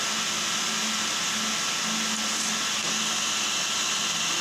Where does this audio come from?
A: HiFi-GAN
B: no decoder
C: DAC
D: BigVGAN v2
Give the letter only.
B